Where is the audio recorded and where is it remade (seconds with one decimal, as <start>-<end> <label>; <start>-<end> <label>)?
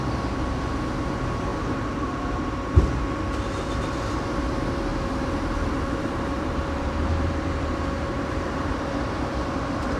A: 0.0-1.5 recorded; 1.5-2.9 remade; 2.9-4.9 recorded; 4.9-9.0 remade; 9.0-10.0 recorded